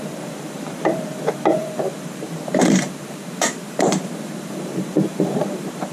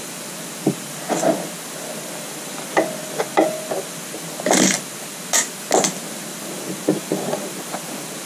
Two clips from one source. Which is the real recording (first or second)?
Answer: second